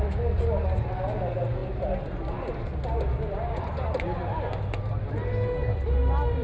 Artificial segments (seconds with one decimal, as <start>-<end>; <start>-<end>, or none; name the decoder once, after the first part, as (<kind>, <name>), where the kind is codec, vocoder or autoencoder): none